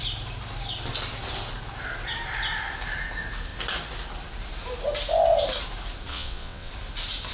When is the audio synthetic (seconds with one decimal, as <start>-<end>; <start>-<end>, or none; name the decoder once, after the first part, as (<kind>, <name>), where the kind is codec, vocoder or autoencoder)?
6.1-6.7 (vocoder, WaveNeXt)